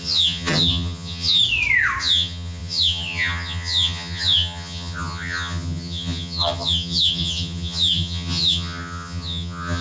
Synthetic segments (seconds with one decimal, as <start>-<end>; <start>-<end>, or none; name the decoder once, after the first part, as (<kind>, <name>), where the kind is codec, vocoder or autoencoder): 0.0-1.4 (vocoder, HiFi-GAN); 2.0-9.8